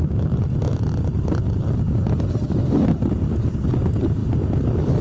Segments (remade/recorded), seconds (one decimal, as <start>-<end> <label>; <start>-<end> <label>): 0.0-5.0 recorded